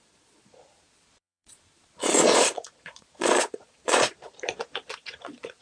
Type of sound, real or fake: fake